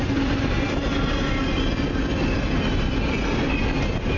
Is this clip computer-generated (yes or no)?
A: no